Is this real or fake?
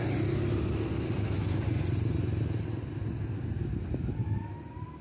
real